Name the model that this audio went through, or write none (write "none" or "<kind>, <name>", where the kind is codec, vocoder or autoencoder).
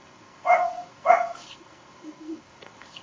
codec, SNAC